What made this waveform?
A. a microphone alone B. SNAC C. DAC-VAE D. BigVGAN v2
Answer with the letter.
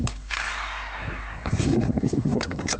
B